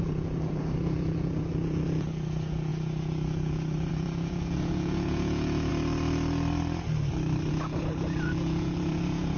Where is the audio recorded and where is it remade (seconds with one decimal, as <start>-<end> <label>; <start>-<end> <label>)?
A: 0.0-5.7 remade; 5.7-7.5 recorded; 7.5-9.4 remade